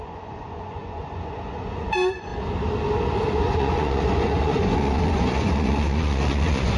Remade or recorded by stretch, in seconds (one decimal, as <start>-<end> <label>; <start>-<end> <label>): 0.0-2.3 remade; 2.3-3.4 recorded; 3.4-6.8 remade